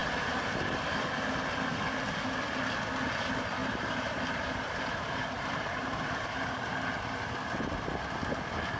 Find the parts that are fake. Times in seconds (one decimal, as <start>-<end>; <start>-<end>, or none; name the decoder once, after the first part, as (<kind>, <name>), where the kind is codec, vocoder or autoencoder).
0.0-1.1 (vocoder, BigVGAN v2); 3.6-6.7